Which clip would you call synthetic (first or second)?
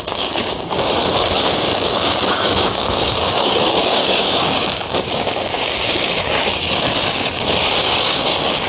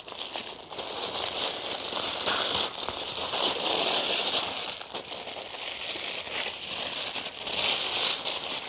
first